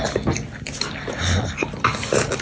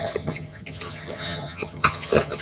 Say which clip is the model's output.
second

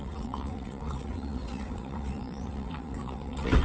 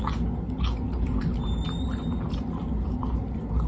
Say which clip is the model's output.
first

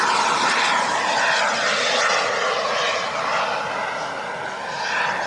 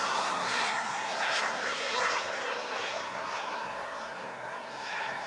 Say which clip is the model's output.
second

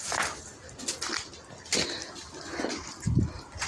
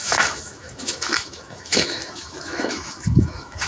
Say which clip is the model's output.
second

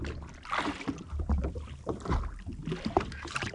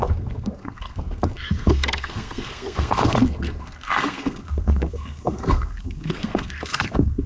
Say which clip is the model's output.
second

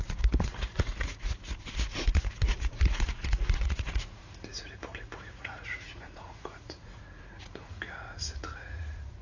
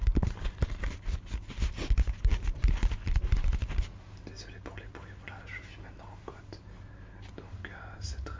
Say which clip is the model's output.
first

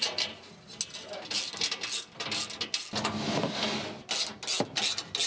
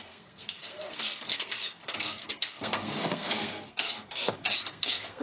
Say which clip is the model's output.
second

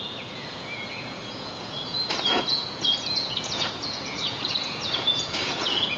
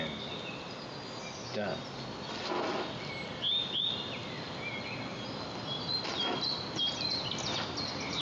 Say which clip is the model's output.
first